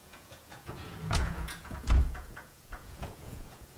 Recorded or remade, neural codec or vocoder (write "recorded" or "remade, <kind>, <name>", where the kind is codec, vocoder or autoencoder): remade, vocoder, Vocos